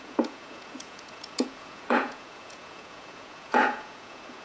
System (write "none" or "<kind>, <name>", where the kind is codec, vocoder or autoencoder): vocoder, Vocos